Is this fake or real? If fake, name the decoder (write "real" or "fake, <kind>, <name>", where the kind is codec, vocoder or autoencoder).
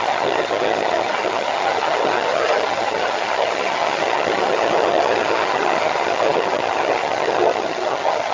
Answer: fake, vocoder, HiFi-GAN